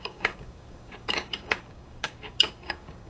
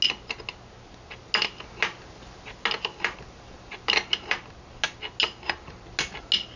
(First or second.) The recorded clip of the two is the second